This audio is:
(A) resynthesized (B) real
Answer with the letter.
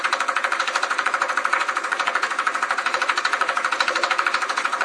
A